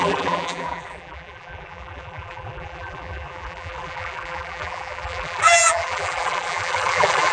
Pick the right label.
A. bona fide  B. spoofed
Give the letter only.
B